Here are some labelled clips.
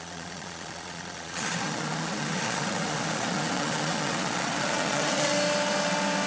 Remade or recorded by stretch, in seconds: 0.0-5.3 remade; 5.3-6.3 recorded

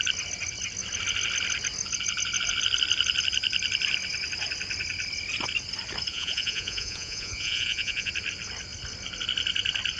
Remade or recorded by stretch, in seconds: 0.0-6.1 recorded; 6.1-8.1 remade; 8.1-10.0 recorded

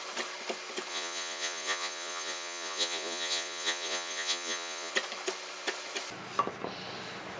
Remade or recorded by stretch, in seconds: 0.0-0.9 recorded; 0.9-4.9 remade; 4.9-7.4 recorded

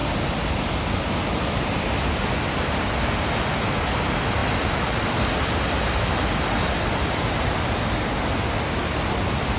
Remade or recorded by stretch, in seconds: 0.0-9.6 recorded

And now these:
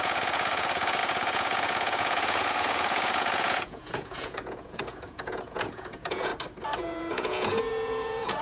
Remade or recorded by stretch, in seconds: 0.0-6.3 remade; 6.3-6.8 recorded; 6.8-8.4 remade

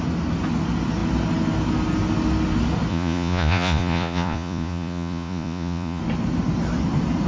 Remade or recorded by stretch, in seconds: 0.0-2.9 recorded; 2.9-6.0 remade; 6.0-7.3 recorded

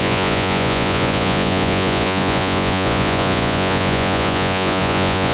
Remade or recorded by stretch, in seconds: 0.0-5.3 remade